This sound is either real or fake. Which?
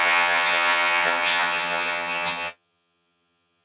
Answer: fake